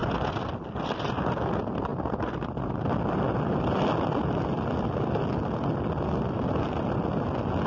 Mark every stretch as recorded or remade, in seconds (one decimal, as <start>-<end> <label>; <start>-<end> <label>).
0.0-1.9 recorded; 1.9-2.7 remade; 2.7-7.7 recorded